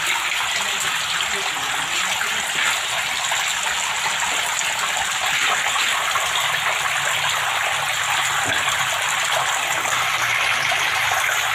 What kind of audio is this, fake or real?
real